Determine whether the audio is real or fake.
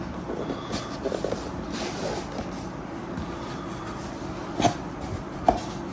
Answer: real